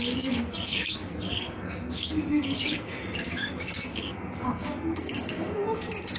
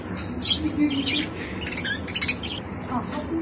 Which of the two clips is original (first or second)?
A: second